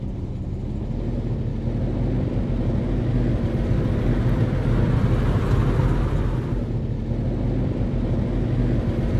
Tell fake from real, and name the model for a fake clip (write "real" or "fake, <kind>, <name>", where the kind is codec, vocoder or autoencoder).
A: real